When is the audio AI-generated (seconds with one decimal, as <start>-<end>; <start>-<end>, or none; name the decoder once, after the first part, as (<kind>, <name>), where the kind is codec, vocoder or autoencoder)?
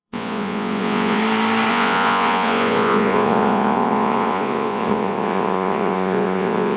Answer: 0.0-1.2 (vocoder, Vocos); 1.7-6.8